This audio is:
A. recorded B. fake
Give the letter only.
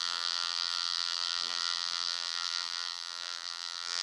B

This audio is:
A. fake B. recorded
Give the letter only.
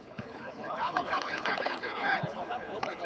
A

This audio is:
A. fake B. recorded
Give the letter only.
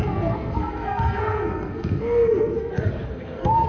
A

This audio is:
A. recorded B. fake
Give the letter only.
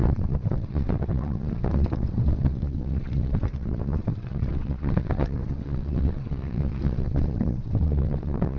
B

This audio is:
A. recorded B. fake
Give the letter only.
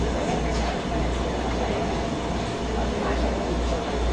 A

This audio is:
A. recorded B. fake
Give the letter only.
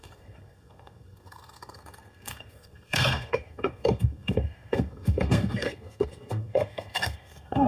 B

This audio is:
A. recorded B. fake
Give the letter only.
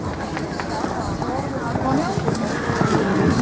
A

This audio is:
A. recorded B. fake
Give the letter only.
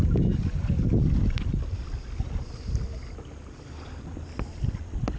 A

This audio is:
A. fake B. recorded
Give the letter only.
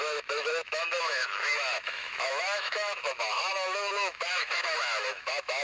A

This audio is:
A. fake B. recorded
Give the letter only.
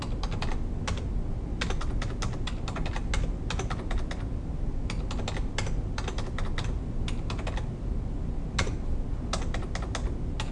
B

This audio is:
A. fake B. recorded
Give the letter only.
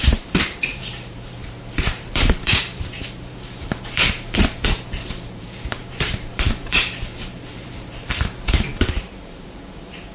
A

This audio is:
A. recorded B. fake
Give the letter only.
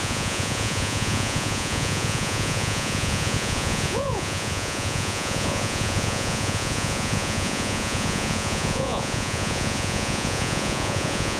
B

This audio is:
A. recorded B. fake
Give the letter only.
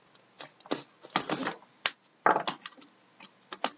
A